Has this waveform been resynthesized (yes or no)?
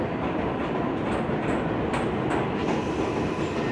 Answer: no